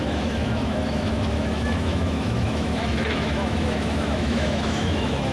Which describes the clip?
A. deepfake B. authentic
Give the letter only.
A